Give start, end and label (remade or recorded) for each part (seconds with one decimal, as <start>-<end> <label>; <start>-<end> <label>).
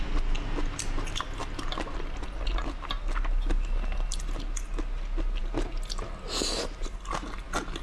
0.0-7.8 recorded